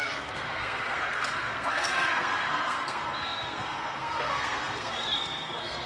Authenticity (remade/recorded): remade